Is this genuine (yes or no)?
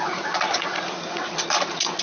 no